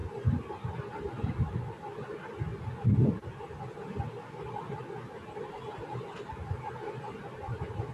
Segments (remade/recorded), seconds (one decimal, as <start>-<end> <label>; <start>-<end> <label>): 0.0-7.9 recorded